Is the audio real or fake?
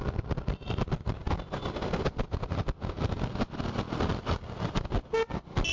real